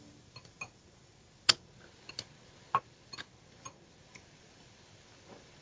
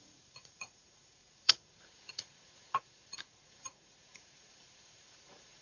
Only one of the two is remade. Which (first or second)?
second